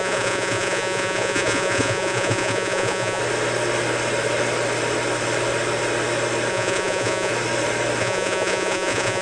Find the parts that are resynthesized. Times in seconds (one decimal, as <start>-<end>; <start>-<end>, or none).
0.0-3.2; 6.5-7.3; 8.0-9.2